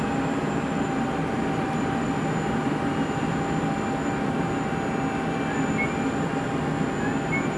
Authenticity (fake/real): real